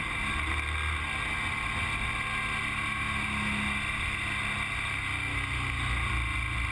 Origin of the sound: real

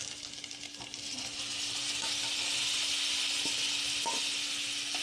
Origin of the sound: real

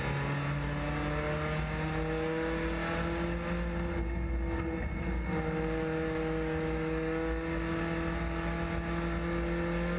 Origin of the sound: real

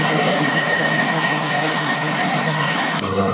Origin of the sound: fake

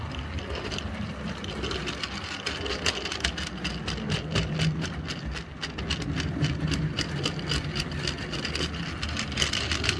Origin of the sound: real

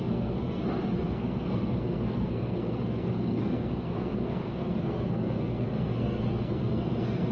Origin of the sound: fake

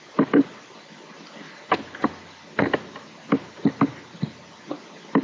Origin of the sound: real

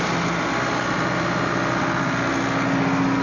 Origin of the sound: real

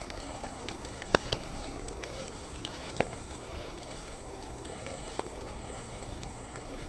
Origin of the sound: fake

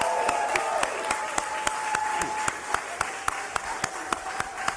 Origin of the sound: real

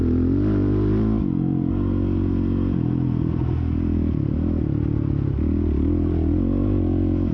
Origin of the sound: real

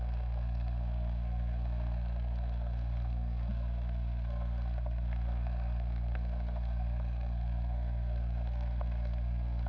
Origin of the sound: fake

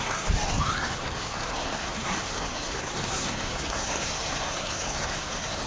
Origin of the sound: fake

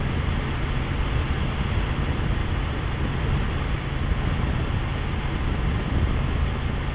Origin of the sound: real